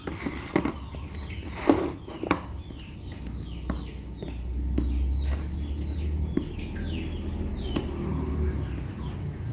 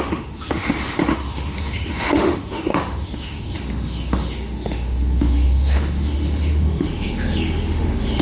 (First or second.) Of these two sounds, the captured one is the first